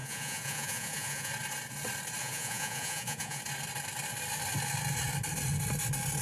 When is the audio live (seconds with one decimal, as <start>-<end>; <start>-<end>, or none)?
1.3-2.2; 3.4-6.2